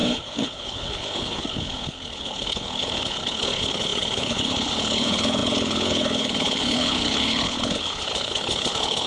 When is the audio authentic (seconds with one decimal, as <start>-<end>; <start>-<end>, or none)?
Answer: none